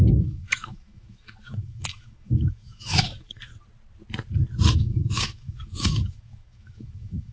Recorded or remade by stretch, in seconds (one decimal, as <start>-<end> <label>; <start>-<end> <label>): 0.0-3.5 remade; 3.5-4.7 recorded; 4.7-7.3 remade